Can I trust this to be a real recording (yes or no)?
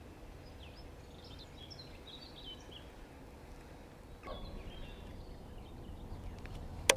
yes